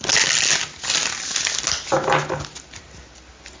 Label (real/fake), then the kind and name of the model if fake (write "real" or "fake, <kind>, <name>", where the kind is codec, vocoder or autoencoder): real